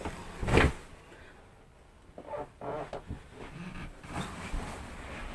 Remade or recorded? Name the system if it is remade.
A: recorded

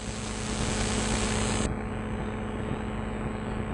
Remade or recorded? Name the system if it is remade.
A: recorded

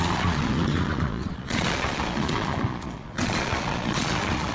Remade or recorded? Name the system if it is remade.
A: remade, vocoder, Vocos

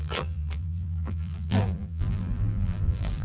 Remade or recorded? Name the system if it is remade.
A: remade, vocoder, BigVGAN v2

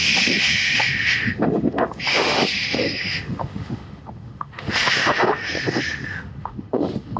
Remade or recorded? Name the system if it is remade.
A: remade, autoencoder, DAC-VAE